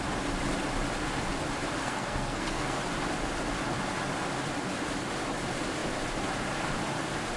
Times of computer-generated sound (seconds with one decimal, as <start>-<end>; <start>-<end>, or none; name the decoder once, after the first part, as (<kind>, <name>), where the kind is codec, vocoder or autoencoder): 1.8-2.8 (codec, SNAC)